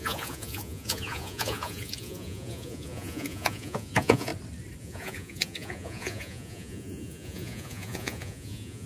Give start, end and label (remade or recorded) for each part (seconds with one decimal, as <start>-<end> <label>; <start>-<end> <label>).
0.0-4.3 remade; 4.3-4.8 recorded; 4.8-8.9 remade